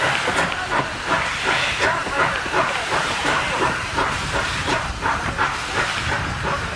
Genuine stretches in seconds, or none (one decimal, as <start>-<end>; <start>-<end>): 0.0-2.0; 5.3-6.8